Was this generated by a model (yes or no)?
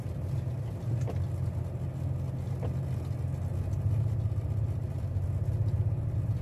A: no